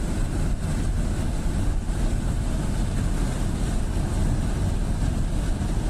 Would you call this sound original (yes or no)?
yes